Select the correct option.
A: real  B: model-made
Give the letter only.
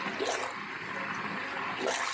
A